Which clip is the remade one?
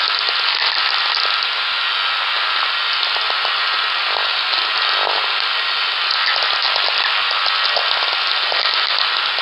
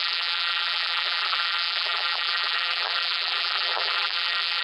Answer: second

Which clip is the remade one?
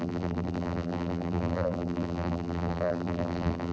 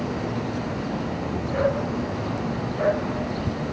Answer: first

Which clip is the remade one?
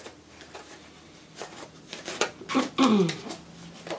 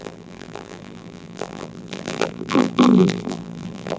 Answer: second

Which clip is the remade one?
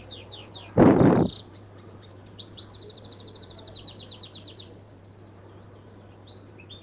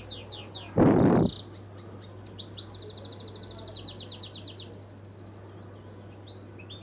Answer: first